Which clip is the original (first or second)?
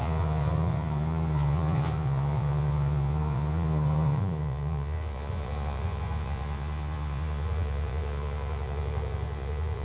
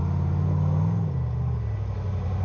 second